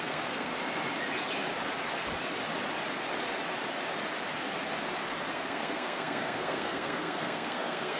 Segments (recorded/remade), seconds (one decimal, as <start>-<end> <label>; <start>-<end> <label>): 0.0-0.5 remade; 0.5-5.3 recorded; 5.3-8.0 remade

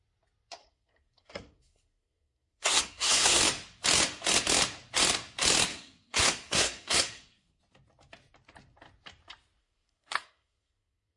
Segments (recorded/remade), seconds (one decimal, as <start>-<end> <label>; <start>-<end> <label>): 0.0-0.6 recorded; 0.6-3.4 remade; 3.4-5.7 recorded; 5.7-7.6 remade; 7.6-9.6 recorded; 9.6-11.2 remade

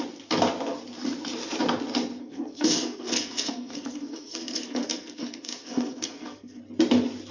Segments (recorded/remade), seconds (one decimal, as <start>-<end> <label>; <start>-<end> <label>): 0.0-2.2 recorded; 2.2-6.6 remade; 6.6-7.3 recorded

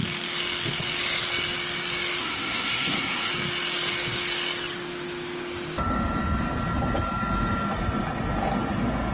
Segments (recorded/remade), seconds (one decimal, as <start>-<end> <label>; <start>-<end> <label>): 0.0-2.2 recorded; 2.2-3.3 remade; 3.3-9.1 recorded

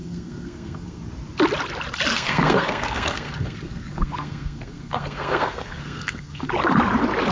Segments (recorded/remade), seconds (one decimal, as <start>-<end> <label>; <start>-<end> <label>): 0.0-1.0 remade; 1.0-2.1 recorded; 2.1-6.5 remade; 6.5-7.3 recorded

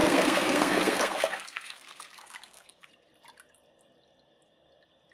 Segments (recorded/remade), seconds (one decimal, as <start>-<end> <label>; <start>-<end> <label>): 0.0-2.9 remade; 2.9-5.1 recorded